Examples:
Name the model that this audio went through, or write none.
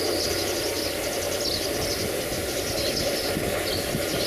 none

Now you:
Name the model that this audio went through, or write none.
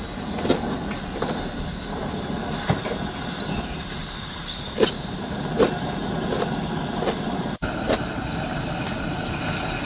none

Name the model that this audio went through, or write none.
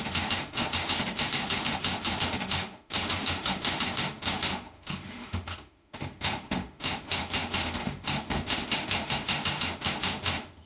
autoencoder, DAC-VAE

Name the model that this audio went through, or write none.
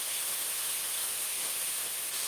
autoencoder, DAC-VAE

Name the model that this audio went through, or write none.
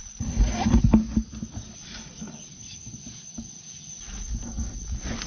none